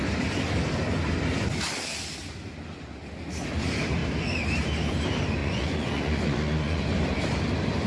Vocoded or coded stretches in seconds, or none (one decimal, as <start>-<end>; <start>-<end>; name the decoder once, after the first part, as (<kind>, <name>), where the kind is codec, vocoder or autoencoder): 5.4-6.8 (vocoder, Vocos)